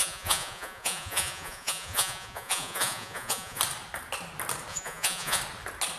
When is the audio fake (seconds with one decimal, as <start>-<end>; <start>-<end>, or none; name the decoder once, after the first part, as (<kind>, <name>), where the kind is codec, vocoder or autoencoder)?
0.0-3.6 (vocoder, Vocos); 4.7-5.4